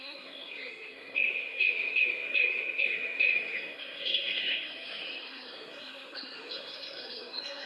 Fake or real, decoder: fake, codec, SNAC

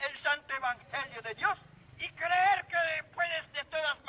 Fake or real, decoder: fake, vocoder, BigVGAN v2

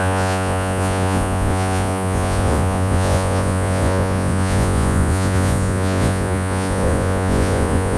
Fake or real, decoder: fake, vocoder, Vocos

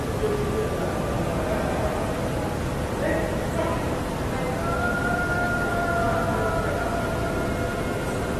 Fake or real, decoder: real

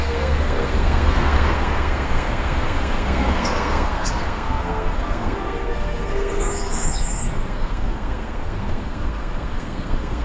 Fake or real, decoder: fake, codec, SNAC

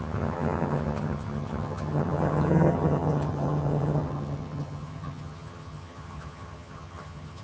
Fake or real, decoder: fake, vocoder, HiFi-GAN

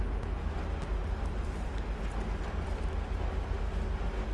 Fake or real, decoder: real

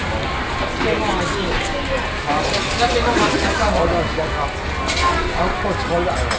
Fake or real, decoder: real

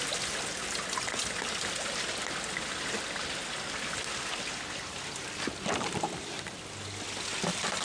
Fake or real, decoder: real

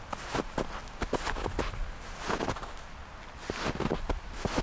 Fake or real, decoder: real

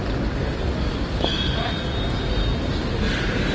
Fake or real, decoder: real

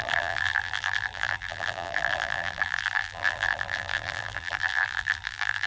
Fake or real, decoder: fake, vocoder, BigVGAN v2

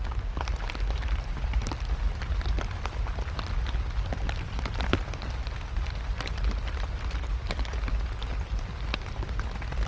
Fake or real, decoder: real